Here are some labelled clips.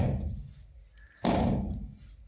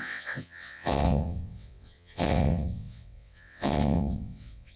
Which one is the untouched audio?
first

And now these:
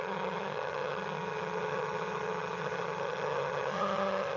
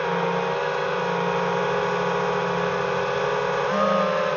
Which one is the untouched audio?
second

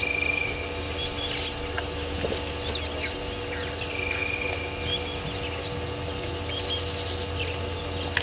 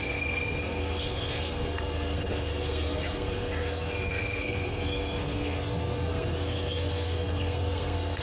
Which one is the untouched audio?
first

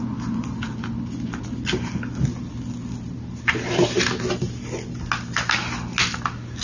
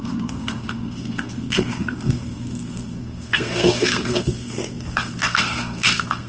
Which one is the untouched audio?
first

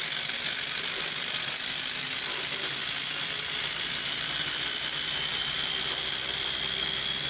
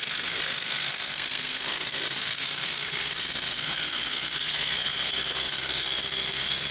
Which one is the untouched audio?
first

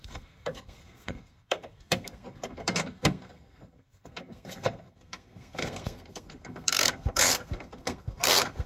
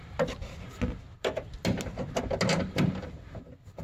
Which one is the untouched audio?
second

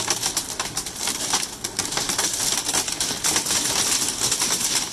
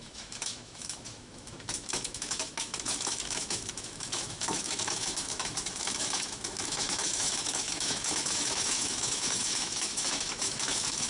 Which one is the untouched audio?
first